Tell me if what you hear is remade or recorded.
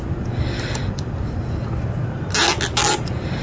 recorded